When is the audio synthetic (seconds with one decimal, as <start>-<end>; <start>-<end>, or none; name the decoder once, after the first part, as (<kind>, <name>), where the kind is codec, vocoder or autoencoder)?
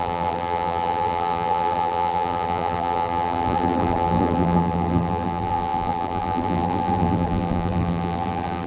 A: 0.0-8.7 (vocoder, BigVGAN v2)